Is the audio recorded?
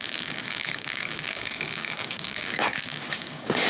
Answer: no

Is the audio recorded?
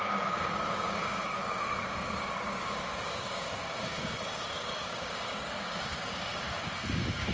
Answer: no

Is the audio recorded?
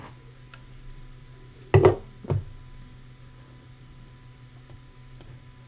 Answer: yes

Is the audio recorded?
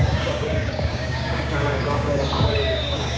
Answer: no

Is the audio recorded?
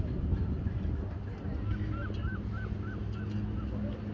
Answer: yes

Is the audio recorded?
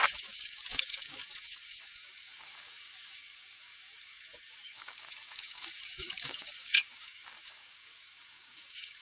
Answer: no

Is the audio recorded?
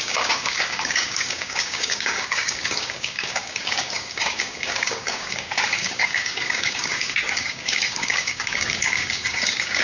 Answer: no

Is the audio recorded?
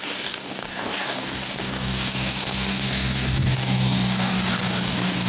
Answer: no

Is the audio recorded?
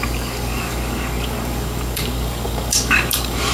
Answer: no